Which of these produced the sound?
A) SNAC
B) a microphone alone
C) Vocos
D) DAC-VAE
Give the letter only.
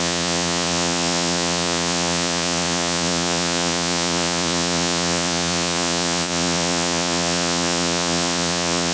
C